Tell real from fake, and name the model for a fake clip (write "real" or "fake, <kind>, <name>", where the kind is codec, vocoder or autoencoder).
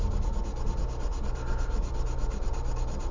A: real